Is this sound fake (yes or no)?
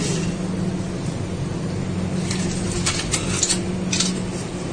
no